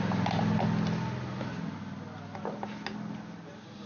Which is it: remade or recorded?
recorded